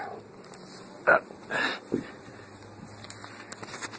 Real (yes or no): yes